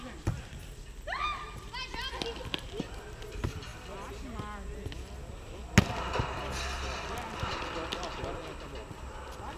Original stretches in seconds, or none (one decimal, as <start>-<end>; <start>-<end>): 0.0-9.6

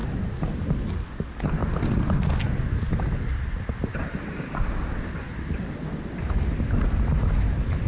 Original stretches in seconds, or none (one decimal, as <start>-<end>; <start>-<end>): 0.0-7.9

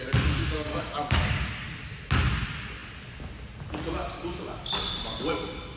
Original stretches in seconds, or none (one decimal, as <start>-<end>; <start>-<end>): 0.0-0.4; 1.2-5.8

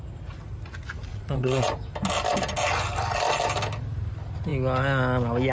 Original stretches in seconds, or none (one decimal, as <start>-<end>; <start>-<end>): 0.0-1.1; 1.7-5.5

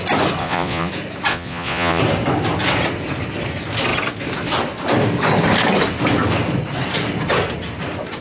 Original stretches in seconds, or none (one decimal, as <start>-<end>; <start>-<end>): 0.0-0.4; 0.9-1.3; 2.0-8.2

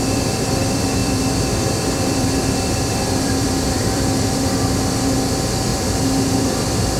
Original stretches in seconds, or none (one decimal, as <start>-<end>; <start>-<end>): 0.0-1.0; 5.2-5.7